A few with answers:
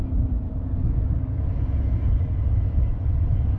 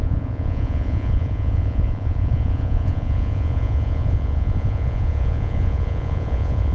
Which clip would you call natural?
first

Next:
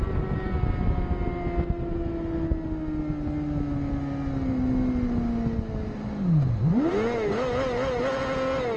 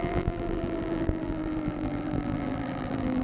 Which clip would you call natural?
first